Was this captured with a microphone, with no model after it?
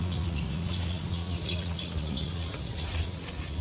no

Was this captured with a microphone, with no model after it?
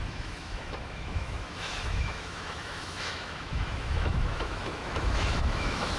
no